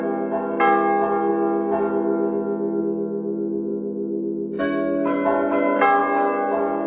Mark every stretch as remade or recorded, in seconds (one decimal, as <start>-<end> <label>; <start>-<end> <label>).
0.0-6.9 recorded